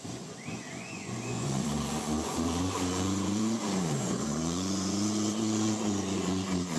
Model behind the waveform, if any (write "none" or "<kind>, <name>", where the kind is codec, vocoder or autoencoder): vocoder, Vocos